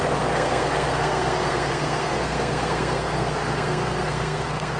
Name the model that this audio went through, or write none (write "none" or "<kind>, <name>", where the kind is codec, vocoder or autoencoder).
codec, SNAC